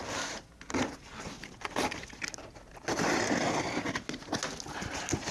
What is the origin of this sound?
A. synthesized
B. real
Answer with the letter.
B